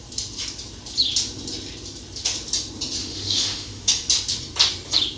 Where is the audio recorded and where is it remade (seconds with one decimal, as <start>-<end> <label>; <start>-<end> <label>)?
0.0-3.0 recorded; 3.0-3.9 remade; 3.9-5.2 recorded